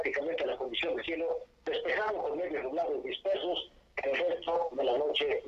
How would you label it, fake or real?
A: real